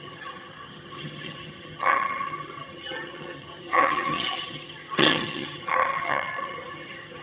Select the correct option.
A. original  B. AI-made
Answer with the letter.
B